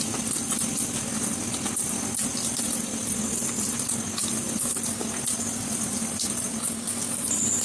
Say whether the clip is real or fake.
real